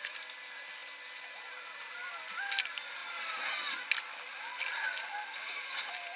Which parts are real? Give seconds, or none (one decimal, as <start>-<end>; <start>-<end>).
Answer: 0.0-6.2